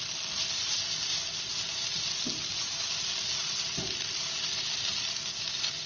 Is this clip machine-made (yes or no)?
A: no